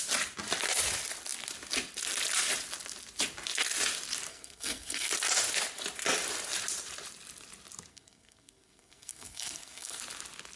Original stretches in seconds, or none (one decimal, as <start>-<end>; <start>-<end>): 0.0-4.3; 5.1-7.9; 10.0-10.6